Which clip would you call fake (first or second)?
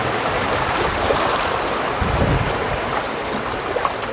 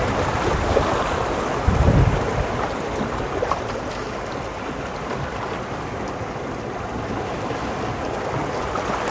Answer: second